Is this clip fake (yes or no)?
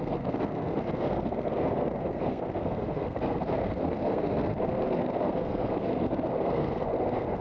yes